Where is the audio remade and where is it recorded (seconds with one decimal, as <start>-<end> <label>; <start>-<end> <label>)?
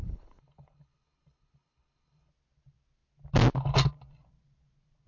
0.0-2.3 remade; 2.3-5.1 recorded